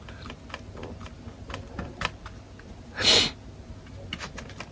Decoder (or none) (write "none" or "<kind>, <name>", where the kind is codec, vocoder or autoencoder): none